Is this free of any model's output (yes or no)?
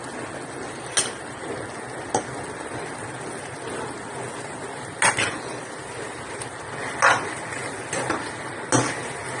yes